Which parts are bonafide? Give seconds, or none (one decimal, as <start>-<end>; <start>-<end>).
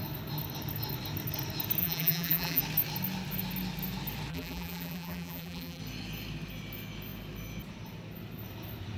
0.0-1.8; 2.6-4.3; 5.8-9.0